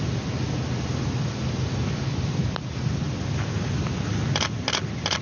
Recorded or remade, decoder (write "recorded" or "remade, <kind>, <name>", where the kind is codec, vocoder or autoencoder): recorded